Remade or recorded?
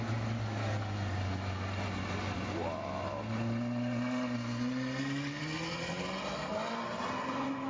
recorded